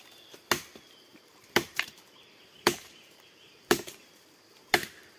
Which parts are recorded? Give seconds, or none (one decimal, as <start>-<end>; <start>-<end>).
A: 0.0-1.1; 4.2-5.2